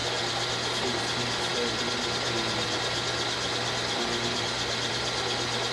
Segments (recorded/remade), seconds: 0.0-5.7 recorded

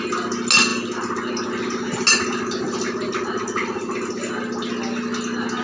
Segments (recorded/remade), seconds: 0.0-5.6 recorded

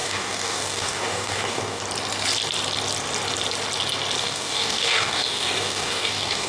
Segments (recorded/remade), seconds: 0.0-1.8 remade; 1.8-4.2 recorded; 4.2-6.5 remade

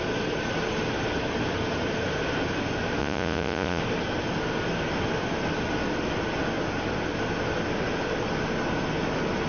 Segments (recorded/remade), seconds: 0.0-3.0 recorded; 3.0-3.8 remade; 3.8-9.5 recorded

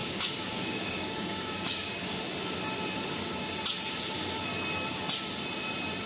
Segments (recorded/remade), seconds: 0.0-2.2 remade; 2.2-6.1 recorded

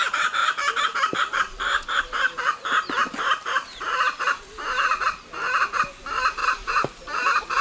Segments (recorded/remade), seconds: 0.0-0.4 recorded; 0.4-5.0 remade; 5.0-6.4 recorded; 6.4-7.6 remade

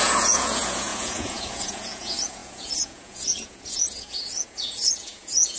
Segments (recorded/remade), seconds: 0.0-5.6 remade